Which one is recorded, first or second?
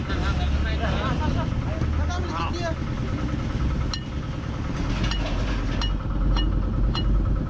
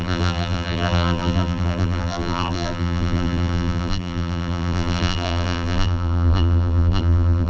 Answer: first